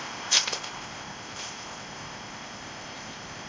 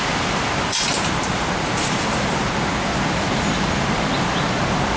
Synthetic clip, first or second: first